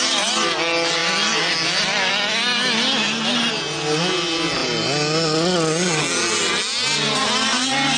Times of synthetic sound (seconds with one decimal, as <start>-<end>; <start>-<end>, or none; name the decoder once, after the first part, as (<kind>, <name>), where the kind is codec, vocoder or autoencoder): none